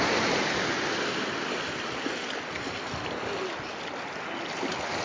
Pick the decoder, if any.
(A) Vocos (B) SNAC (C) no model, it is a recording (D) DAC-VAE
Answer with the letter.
C